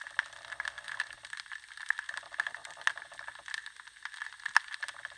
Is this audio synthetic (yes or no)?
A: no